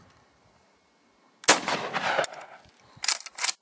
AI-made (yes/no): no